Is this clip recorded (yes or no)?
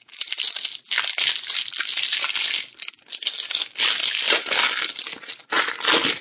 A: yes